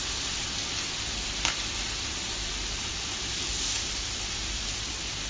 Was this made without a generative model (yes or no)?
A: yes